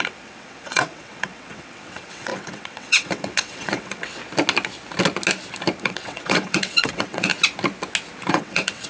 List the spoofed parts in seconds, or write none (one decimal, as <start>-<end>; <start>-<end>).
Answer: 0.0-4.2; 5.8-7.3; 8.3-8.9